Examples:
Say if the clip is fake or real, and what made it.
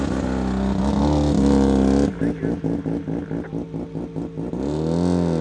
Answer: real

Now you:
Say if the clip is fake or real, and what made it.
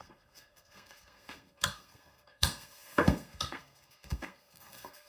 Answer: fake, codec, SNAC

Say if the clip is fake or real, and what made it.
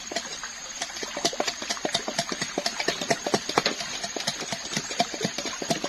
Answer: fake, vocoder, BigVGAN v2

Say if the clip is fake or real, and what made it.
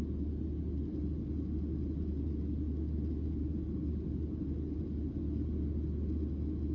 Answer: real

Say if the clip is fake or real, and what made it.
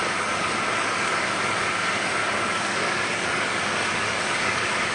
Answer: fake, codec, DAC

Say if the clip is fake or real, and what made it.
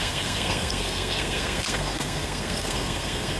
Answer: fake, codec, SNAC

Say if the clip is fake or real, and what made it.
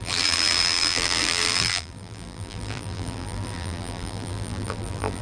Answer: fake, vocoder, BigVGAN v2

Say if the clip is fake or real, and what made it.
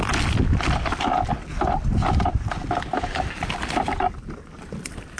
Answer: real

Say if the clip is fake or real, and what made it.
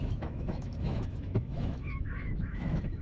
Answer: fake, autoencoder, DAC-VAE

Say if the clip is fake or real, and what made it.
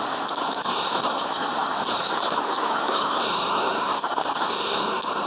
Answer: fake, codec, SNAC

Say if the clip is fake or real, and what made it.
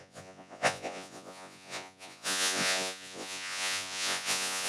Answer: fake, vocoder, Vocos